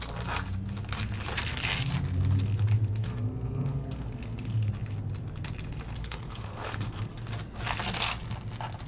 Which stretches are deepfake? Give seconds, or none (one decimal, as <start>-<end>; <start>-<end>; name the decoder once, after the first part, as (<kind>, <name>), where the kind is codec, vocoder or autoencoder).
3.0-4.7 (codec, SNAC); 6.0-7.2